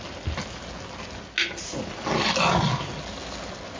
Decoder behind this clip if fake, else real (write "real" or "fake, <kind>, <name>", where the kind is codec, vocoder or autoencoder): real